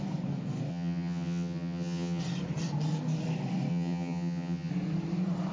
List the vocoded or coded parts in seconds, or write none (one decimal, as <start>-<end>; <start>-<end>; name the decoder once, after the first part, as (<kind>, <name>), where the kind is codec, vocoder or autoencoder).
0.7-2.2 (vocoder, HiFi-GAN); 3.7-4.7